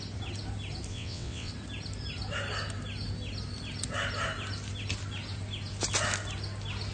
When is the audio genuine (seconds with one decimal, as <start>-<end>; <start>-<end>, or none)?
0.0-0.9; 1.5-6.9